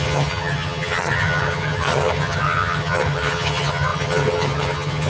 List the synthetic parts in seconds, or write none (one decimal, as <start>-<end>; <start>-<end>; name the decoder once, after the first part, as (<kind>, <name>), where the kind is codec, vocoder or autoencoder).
0.0-5.1 (vocoder, HiFi-GAN)